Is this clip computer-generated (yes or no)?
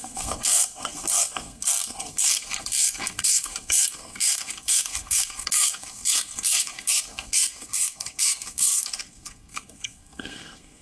yes